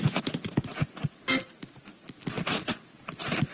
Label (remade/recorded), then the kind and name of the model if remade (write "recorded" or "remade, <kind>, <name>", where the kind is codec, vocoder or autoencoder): recorded